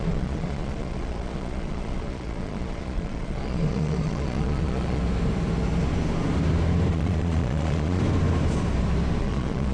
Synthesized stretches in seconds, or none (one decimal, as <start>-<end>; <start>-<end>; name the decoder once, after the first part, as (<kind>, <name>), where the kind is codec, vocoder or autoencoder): 0.0-5.0 (vocoder, Vocos); 6.9-8.0; 9.2-9.7